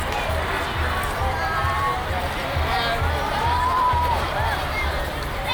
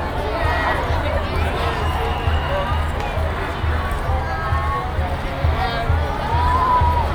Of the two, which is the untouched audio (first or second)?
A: second